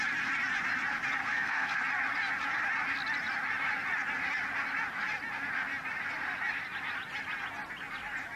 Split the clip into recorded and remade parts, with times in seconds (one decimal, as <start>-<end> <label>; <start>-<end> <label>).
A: 0.0-1.2 recorded; 1.2-1.8 remade; 1.8-8.4 recorded